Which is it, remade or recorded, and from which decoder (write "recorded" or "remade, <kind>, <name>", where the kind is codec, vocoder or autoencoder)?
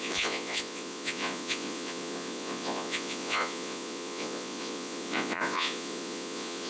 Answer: remade, vocoder, Vocos